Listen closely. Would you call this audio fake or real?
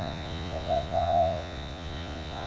fake